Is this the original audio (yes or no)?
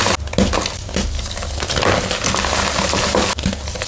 yes